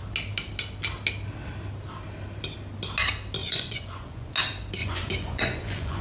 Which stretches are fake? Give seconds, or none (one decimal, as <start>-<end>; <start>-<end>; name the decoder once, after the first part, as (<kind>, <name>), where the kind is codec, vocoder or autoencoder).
3.4-4.3 (vocoder, Vocos); 4.8-6.0